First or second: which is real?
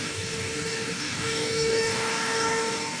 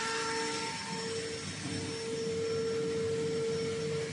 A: second